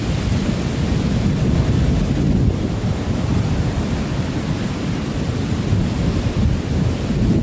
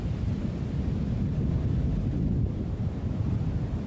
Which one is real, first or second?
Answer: second